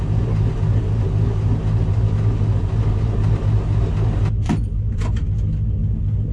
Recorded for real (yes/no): yes